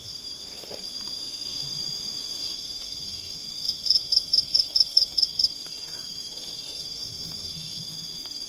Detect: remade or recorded remade